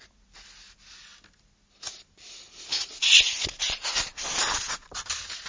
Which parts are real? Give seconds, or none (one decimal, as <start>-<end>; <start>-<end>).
0.0-5.5